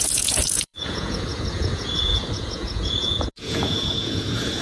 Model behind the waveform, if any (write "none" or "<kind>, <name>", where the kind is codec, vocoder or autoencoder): vocoder, Vocos